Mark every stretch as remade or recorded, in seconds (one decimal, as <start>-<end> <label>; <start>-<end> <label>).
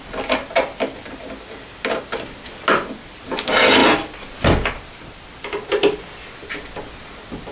0.0-7.5 recorded